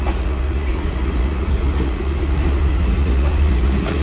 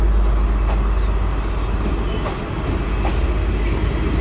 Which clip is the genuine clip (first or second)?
second